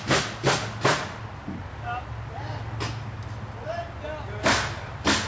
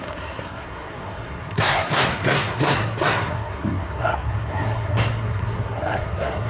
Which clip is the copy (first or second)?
second